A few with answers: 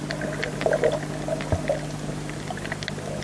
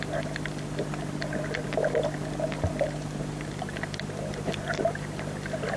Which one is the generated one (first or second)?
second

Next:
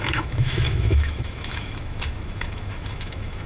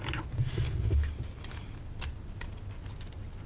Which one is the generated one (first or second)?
first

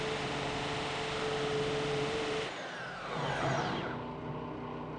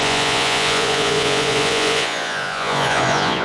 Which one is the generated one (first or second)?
second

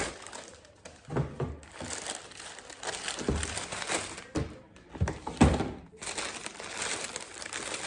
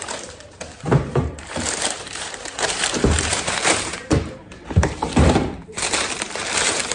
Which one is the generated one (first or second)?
second